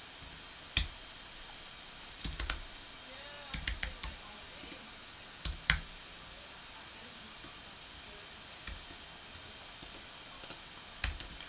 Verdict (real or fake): real